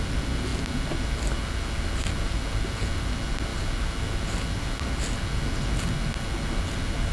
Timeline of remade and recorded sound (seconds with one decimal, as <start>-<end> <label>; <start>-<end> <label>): 0.0-7.1 recorded